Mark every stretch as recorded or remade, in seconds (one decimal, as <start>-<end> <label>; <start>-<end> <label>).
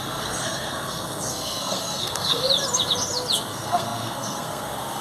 0.0-2.4 remade; 2.4-3.5 recorded; 3.5-5.0 remade